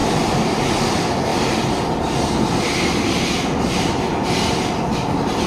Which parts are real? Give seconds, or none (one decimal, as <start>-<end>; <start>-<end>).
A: 0.0-5.5